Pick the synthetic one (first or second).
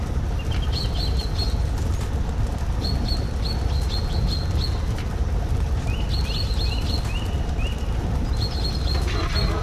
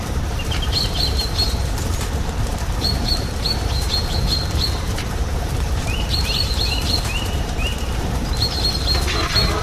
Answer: second